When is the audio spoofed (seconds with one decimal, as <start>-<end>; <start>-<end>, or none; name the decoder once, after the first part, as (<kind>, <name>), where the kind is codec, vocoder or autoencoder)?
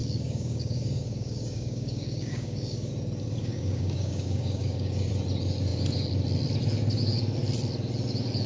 0.0-2.9 (codec, DAC); 3.4-5.1